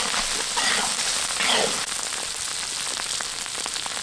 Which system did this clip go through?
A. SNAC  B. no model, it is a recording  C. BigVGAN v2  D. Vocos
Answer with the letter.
B